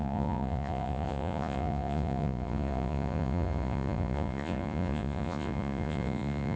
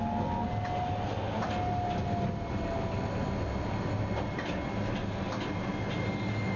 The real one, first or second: second